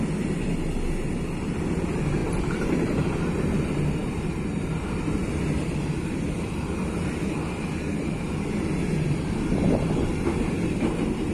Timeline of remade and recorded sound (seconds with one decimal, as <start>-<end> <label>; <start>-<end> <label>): 0.0-11.3 recorded